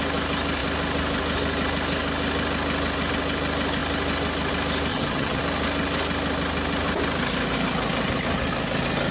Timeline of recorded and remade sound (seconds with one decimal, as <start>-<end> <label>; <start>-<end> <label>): 0.0-4.9 recorded; 4.9-5.4 remade; 5.4-9.1 recorded

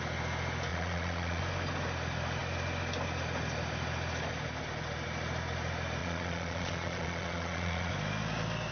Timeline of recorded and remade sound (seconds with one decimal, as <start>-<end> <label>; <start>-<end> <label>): 0.0-0.7 recorded; 0.7-1.4 remade; 1.4-6.0 recorded; 6.0-7.9 remade; 7.9-8.7 recorded